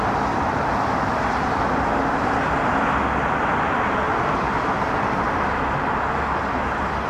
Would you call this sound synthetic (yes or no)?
no